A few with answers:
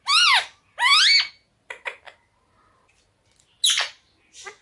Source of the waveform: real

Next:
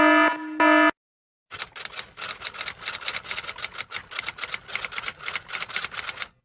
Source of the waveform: real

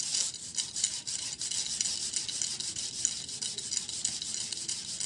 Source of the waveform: real